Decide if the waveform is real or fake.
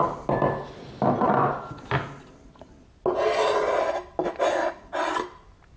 real